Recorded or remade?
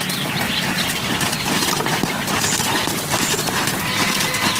recorded